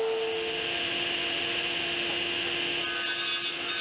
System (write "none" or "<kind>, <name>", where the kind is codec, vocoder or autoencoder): none